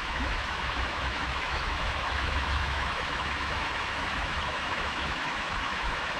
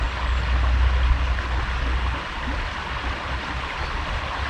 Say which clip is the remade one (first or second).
first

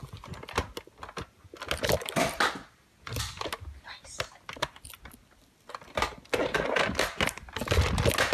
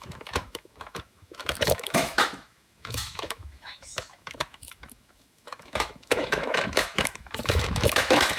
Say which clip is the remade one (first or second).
second